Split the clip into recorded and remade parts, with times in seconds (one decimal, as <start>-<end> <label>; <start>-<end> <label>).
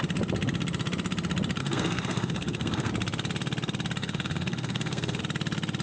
0.0-1.6 recorded; 1.6-2.9 remade; 2.9-4.0 recorded; 4.0-5.2 remade; 5.2-5.8 recorded